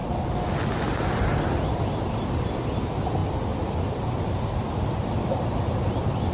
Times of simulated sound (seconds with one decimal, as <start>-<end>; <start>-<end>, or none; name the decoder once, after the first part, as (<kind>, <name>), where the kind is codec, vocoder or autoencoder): 2.1-6.3 (vocoder, BigVGAN v2)